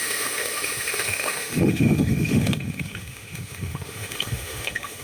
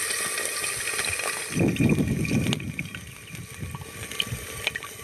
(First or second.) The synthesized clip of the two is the first